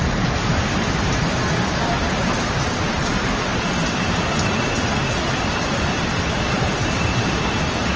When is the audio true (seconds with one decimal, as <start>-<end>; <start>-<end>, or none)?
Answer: none

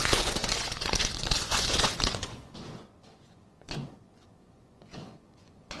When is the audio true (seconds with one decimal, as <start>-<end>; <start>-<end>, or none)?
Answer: none